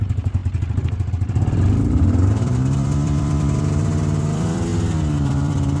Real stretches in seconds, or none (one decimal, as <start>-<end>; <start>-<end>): 0.4-1.1